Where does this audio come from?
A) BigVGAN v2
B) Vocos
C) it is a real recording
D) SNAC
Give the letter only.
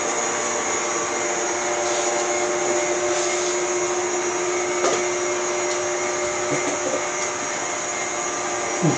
C